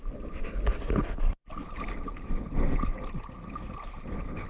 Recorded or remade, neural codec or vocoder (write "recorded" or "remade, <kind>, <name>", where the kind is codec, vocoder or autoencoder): recorded